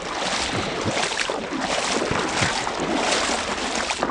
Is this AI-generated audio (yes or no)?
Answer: no